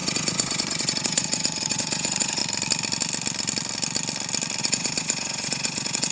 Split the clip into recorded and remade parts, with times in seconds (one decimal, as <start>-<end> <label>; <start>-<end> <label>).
0.0-2.4 remade; 2.4-4.6 recorded; 4.6-6.1 remade